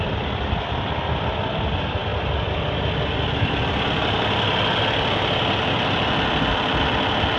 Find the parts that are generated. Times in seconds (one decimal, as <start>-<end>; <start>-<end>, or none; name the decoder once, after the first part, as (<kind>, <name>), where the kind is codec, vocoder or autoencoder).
none

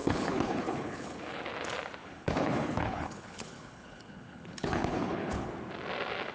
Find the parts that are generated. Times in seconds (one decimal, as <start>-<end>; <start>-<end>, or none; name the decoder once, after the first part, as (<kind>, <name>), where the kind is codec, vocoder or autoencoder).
0.0-1.4 (codec, HILCodec); 2.0-5.5